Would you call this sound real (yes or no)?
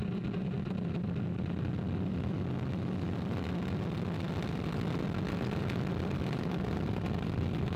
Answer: yes